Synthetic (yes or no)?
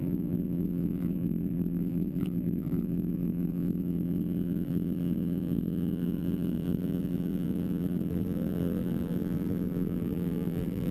yes